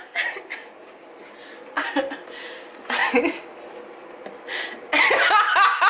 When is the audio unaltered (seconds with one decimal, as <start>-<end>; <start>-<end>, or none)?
0.0-5.9

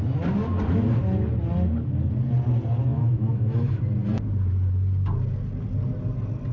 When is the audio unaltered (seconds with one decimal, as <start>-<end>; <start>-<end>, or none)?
0.0-2.9; 3.8-6.5

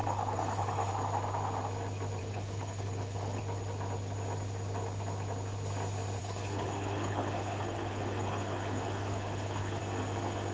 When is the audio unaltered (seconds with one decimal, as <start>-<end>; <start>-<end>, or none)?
0.9-2.2; 3.4-6.2; 9.8-10.5